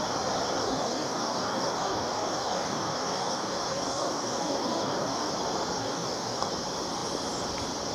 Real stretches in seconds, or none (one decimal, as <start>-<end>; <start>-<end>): 0.0-0.6; 5.3-5.8; 6.5-7.9